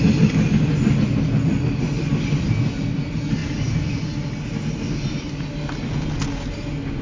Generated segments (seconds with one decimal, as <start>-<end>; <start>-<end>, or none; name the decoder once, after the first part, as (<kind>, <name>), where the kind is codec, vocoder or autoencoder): none